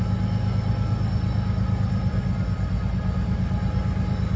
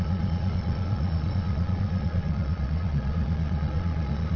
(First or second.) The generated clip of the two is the second